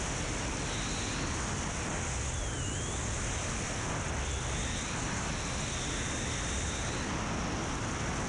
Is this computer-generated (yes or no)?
no